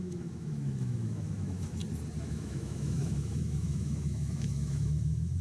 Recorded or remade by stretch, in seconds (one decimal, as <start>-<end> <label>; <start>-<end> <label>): 0.0-1.8 remade; 1.8-2.3 recorded; 2.3-5.4 remade